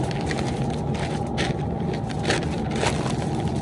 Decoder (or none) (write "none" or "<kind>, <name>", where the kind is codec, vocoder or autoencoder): none